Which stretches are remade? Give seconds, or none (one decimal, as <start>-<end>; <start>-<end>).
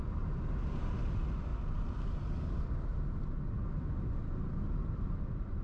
0.0-2.9; 4.7-5.6